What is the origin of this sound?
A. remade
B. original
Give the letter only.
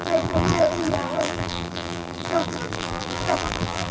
A